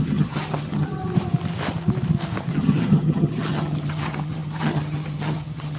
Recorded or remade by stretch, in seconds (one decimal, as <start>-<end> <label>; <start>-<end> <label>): 0.0-1.0 remade; 1.0-2.5 recorded; 2.5-5.8 remade